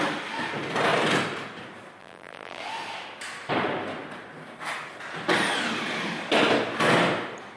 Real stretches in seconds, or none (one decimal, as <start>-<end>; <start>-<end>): 0.0-2.0; 2.6-7.6